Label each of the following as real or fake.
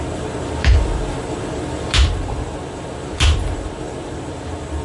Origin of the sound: fake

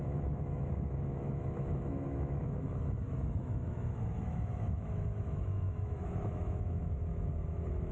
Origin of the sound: fake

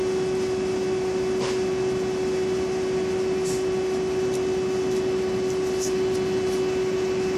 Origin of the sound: real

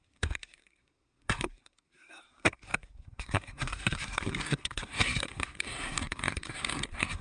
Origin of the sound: fake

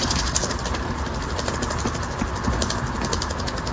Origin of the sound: real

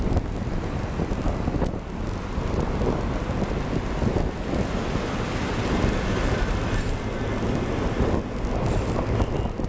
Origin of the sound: real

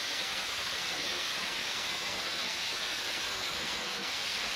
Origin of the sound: fake